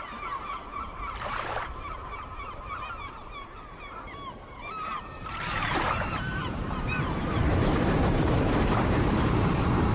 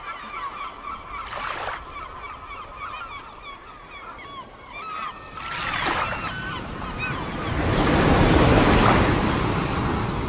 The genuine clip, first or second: second